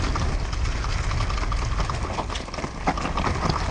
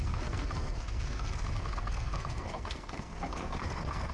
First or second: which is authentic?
first